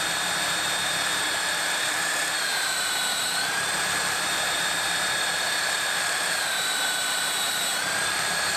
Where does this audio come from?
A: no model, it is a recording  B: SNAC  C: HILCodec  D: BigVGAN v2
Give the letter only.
D